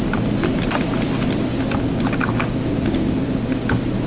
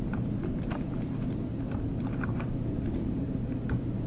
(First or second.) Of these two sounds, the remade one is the second